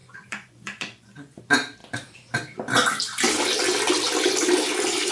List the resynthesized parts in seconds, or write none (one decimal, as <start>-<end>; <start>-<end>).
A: 0.0-1.4